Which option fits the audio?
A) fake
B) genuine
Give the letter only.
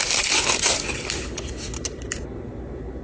B